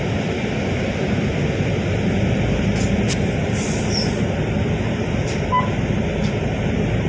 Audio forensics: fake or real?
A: real